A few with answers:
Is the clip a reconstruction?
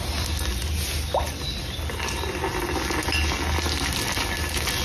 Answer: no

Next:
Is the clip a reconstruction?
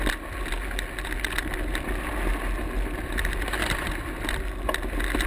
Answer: no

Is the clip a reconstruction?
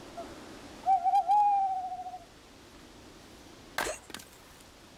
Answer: no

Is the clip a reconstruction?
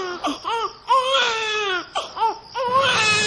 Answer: no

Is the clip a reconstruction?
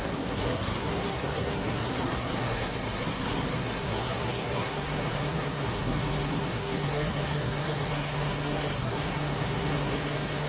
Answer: yes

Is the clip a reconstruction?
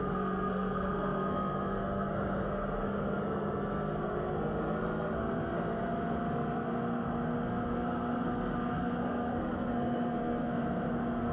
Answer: yes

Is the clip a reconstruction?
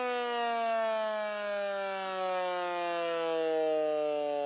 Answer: no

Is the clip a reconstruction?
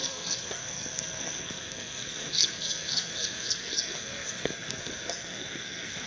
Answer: yes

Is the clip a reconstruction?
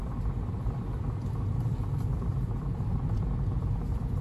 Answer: no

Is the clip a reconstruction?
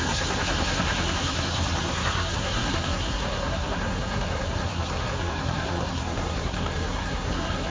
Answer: yes